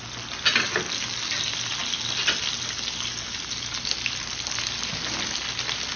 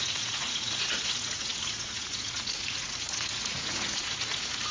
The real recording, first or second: first